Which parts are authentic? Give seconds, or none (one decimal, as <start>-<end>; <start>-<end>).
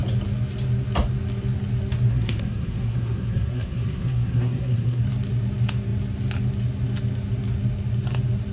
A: 0.0-2.1; 5.0-8.5